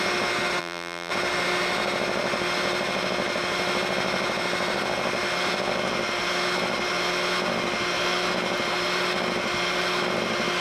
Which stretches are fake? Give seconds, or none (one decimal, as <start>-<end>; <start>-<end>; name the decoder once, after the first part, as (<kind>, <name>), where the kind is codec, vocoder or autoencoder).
0.6-1.1 (vocoder, BigVGAN v2)